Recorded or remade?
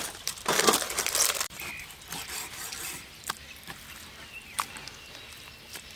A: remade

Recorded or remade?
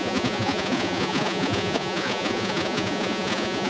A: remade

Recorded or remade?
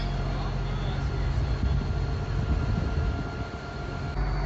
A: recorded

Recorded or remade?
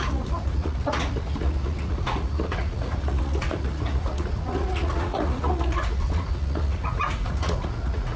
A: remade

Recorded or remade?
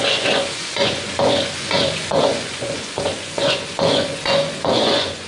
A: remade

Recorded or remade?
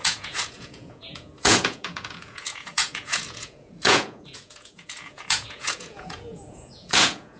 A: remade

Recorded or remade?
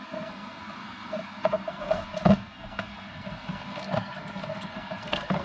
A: remade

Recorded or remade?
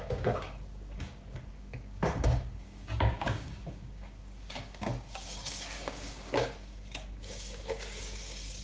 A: remade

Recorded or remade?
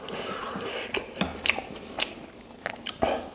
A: recorded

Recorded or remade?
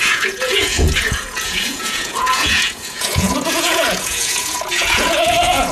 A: remade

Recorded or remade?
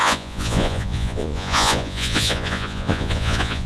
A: remade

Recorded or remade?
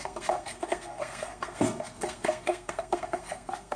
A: remade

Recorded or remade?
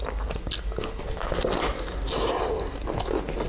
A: recorded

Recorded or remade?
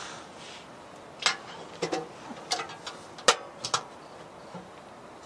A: recorded